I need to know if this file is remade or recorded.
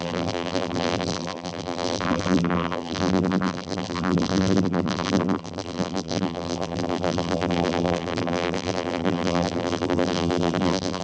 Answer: remade